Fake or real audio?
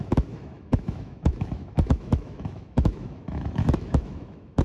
fake